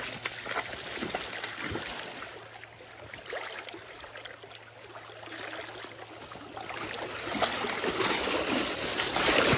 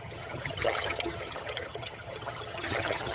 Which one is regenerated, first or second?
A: second